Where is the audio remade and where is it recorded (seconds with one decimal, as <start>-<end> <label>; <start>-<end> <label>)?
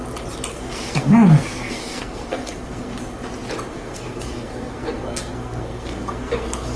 0.0-0.5 recorded; 0.5-3.0 remade; 3.0-3.7 recorded; 3.7-6.8 remade